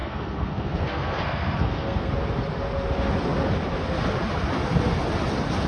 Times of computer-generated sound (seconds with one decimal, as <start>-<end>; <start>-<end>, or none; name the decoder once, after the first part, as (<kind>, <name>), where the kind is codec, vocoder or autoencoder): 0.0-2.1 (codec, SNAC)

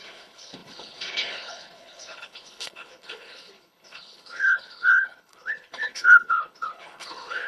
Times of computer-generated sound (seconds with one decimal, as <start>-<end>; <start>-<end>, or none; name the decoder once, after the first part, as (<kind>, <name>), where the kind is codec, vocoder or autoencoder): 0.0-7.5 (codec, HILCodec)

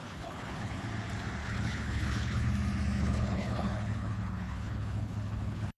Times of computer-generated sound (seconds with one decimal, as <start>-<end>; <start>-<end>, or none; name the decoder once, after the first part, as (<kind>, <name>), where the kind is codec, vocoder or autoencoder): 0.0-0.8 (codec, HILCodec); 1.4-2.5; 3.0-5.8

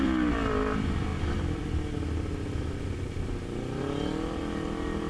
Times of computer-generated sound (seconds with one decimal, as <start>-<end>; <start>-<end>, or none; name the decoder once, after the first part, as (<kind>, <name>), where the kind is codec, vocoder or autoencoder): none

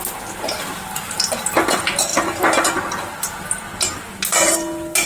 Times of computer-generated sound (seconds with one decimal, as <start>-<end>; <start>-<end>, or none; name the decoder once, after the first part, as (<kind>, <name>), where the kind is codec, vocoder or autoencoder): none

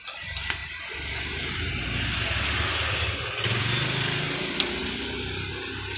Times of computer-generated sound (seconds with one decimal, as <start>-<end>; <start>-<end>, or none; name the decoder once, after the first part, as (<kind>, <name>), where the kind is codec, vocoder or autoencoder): none